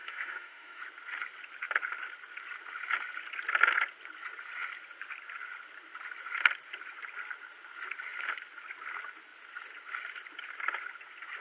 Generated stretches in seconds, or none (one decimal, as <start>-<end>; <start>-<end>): 0.0-0.8